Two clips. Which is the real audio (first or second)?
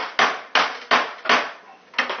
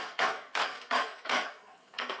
first